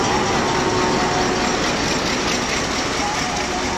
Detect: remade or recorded recorded